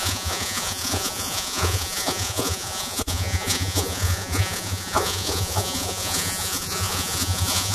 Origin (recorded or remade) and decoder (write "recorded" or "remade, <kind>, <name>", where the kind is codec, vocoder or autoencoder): remade, vocoder, Vocos